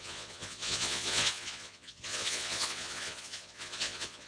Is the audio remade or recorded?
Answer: remade